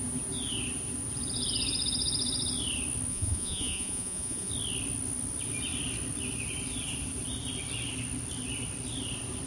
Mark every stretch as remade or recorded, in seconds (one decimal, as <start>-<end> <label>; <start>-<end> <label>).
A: 0.0-3.1 recorded; 3.1-4.5 remade; 4.5-9.5 recorded

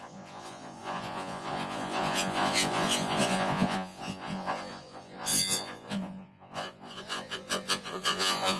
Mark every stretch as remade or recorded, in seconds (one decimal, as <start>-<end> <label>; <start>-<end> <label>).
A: 0.0-8.6 remade

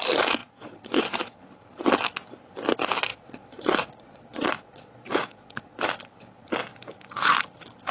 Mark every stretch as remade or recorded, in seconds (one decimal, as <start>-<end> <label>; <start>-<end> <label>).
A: 0.0-0.4 recorded; 0.4-1.0 remade; 1.0-3.1 recorded; 3.1-5.8 remade; 5.8-7.9 recorded